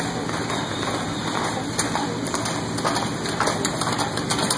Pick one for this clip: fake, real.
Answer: real